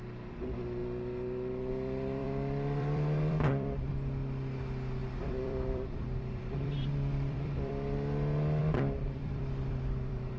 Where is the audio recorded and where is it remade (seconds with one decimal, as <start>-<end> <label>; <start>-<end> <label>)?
0.0-2.2 recorded; 2.2-3.9 remade; 3.9-5.0 recorded; 5.0-7.7 remade; 7.7-8.6 recorded; 8.6-10.4 remade